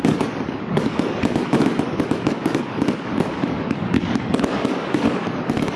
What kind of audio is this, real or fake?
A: fake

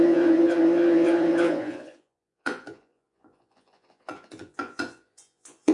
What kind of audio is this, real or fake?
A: fake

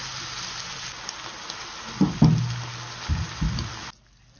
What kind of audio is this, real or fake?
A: real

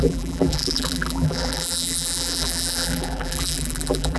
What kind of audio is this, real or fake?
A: fake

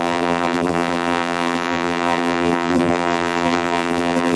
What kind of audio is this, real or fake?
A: fake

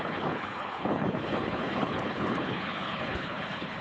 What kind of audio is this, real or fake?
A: fake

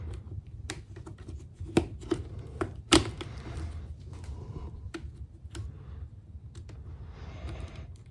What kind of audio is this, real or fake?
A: real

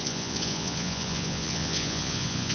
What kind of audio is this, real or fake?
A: fake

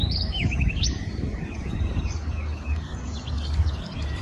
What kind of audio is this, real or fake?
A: fake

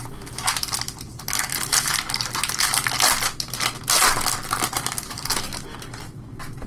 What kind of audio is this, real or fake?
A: real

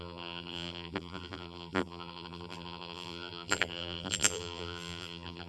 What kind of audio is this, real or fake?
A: fake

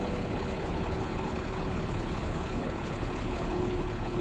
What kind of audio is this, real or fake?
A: fake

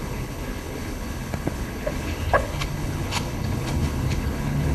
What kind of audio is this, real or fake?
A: fake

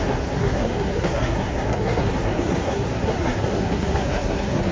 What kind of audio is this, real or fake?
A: fake